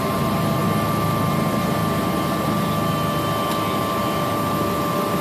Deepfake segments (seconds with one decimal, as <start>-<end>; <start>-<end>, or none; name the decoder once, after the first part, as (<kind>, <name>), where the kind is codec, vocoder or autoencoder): 0.0-0.6 (vocoder, BigVGAN v2); 1.3-1.8